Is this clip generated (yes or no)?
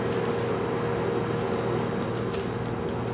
no